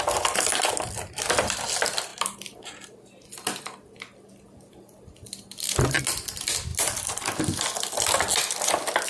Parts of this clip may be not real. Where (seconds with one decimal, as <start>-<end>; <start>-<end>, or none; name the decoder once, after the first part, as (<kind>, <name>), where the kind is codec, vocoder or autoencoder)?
none